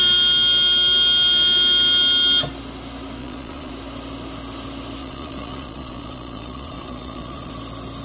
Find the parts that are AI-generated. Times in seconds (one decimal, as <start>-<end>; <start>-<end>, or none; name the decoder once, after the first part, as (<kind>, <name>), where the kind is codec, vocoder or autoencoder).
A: 3.2-3.7 (vocoder, Vocos); 5.0-7.5